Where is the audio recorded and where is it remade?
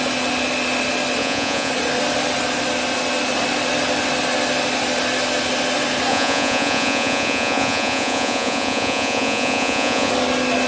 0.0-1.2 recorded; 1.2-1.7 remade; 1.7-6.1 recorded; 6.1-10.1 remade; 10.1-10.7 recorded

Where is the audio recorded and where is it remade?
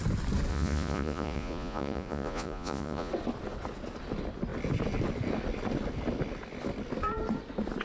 0.0-0.5 recorded; 0.5-3.1 remade; 3.1-7.8 recorded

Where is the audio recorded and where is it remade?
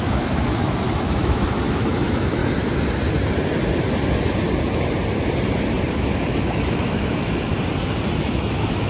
0.0-2.4 remade; 2.4-5.9 recorded; 5.9-7.5 remade; 7.5-8.3 recorded; 8.3-8.9 remade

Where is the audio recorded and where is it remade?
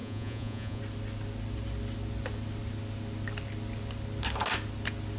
0.0-0.8 remade; 0.8-5.2 recorded